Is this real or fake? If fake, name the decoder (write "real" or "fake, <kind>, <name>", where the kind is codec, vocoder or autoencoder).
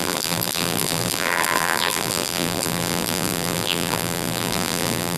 fake, vocoder, BigVGAN v2